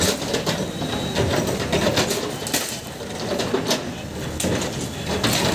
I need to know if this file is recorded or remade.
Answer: recorded